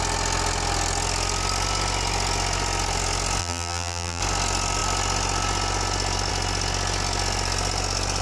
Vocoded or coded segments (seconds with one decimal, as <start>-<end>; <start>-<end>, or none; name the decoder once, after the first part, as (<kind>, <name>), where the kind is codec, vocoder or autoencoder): 3.4-4.2 (vocoder, BigVGAN v2)

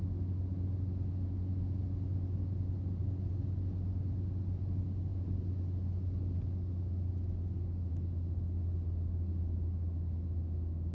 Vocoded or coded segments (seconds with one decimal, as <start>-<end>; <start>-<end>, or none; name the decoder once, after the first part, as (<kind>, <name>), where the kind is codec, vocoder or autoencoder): none

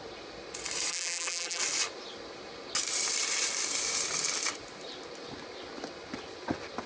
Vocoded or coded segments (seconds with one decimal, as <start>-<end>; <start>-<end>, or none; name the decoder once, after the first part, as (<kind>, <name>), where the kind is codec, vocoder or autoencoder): 0.9-1.6 (vocoder, BigVGAN v2)